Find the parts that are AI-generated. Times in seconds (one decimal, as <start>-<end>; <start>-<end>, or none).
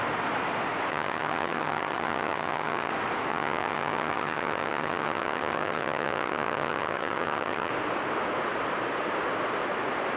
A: 0.9-2.9; 3.3-7.7